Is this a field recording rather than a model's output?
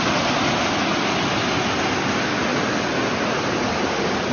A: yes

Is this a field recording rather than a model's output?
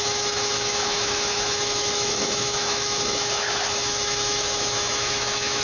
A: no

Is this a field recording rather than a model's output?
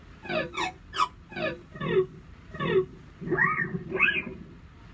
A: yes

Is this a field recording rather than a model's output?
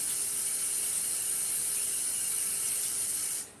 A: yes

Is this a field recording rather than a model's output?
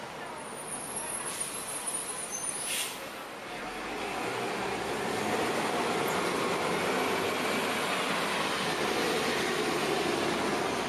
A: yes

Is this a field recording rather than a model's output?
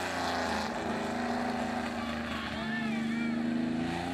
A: yes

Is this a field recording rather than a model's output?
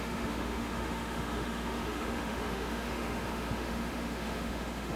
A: no